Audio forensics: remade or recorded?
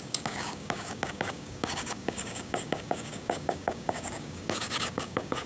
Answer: remade